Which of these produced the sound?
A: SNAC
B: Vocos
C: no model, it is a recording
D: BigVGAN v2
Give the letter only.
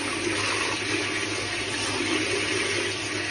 C